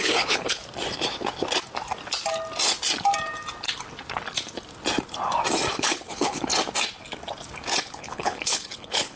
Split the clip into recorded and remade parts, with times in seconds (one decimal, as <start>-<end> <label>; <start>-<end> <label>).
0.0-0.6 remade; 0.6-5.7 recorded; 5.7-6.5 remade; 6.5-7.8 recorded; 7.8-9.2 remade